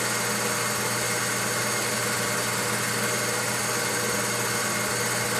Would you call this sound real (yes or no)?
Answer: yes